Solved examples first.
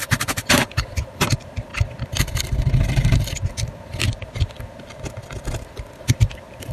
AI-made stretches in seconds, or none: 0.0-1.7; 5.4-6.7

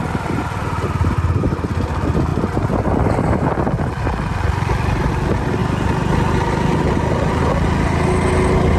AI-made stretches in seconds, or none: 5.6-7.5

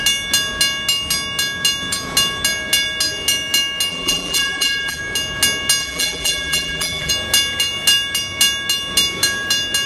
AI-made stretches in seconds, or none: 3.9-5.0; 5.8-7.1

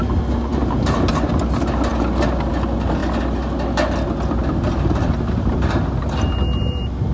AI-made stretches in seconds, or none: 0.5-1.3

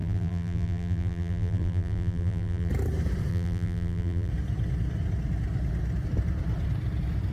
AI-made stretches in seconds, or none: 0.0-2.7; 3.3-4.3

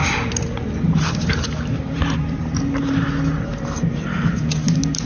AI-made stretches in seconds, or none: 0.0-2.6

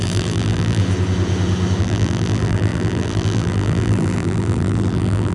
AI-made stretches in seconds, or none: 0.0-0.8; 1.8-5.3

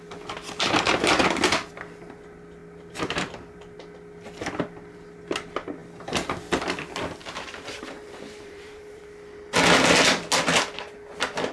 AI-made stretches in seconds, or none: 7.2-9.0